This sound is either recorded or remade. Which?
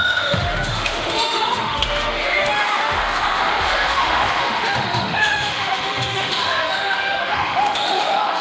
remade